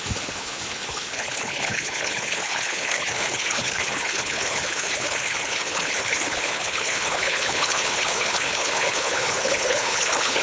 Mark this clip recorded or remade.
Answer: remade